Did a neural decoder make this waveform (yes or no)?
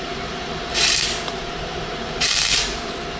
yes